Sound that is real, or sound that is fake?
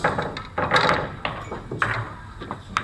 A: real